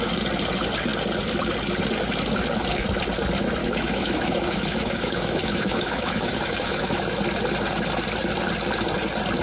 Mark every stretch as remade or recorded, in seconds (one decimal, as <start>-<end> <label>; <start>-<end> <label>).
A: 0.0-3.6 recorded; 3.6-7.0 remade; 7.0-9.4 recorded